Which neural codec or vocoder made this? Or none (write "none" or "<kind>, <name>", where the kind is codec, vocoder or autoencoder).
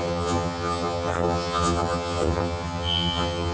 vocoder, HiFi-GAN